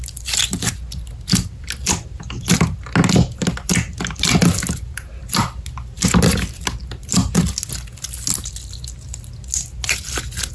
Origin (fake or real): real